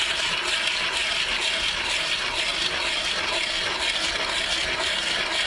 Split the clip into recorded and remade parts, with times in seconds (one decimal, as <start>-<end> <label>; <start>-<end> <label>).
0.0-5.5 recorded